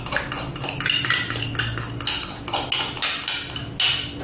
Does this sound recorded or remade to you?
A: recorded